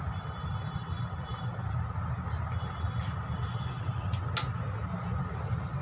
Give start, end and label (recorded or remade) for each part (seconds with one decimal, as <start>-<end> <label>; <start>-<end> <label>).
0.0-5.8 recorded